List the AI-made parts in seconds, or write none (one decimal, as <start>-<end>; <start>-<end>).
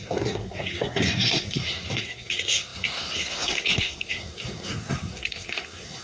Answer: 0.0-6.0